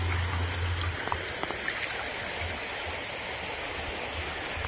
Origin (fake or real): real